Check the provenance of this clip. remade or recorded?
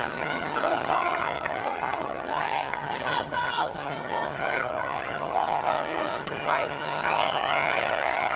remade